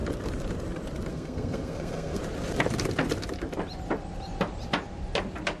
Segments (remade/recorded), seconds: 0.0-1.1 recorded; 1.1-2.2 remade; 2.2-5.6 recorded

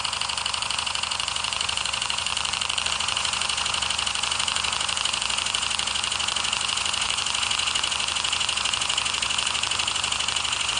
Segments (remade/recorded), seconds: 0.0-2.3 remade; 2.3-2.9 recorded; 2.9-10.8 remade

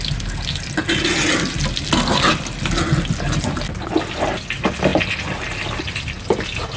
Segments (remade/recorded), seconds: 0.0-6.8 recorded

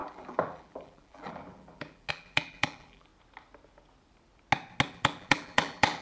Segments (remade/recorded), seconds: 0.0-3.1 remade; 3.1-4.9 recorded; 4.9-6.0 remade